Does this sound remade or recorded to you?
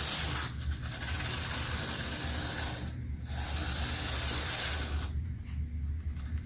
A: recorded